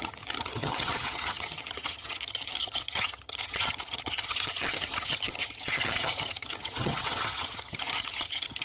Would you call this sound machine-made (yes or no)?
yes